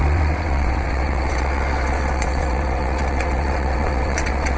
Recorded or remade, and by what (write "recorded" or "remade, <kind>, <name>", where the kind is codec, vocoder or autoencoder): remade, vocoder, WaveNeXt